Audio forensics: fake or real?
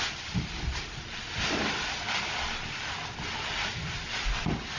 real